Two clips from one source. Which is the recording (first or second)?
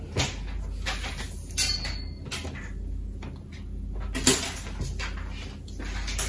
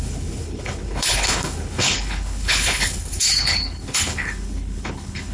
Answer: first